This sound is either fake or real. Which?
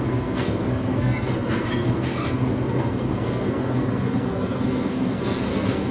fake